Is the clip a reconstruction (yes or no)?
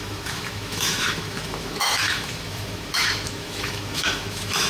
yes